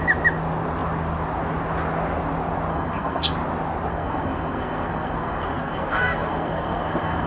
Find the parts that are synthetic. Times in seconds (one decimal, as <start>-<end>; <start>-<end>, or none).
2.7-3.3; 3.9-7.3